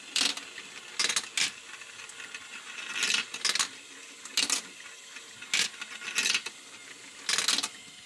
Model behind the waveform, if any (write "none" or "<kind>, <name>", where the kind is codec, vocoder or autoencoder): none